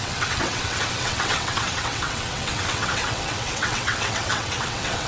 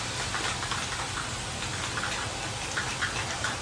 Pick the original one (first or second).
second